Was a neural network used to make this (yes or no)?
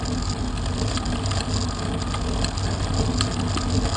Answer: no